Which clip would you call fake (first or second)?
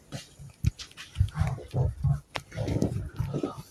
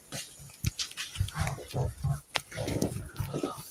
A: first